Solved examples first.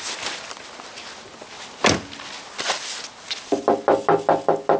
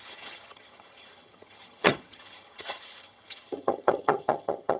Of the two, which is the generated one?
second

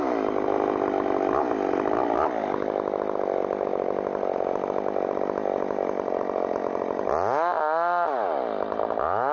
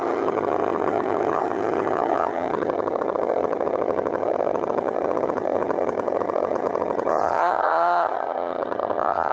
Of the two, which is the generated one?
second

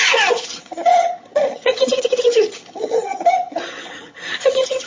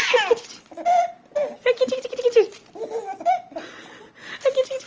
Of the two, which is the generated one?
first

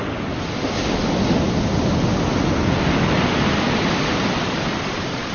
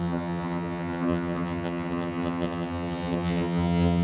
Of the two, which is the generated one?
second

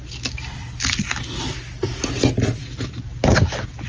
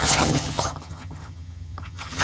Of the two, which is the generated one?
second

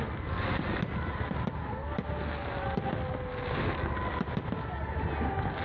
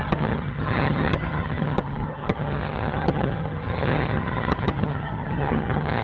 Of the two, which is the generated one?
second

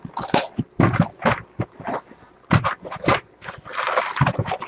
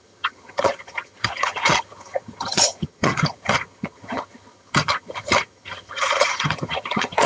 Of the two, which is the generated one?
second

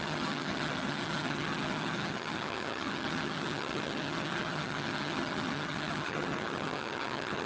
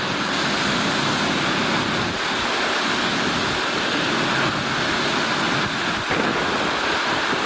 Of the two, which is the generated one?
first